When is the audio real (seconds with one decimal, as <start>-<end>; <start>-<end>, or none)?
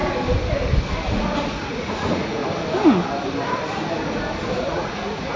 0.0-1.1; 2.4-4.6